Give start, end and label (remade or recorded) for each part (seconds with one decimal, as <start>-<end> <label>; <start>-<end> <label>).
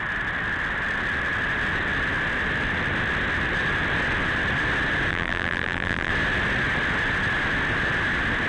0.0-5.1 recorded; 5.1-6.1 remade; 6.1-8.5 recorded